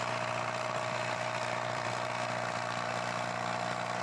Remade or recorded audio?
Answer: remade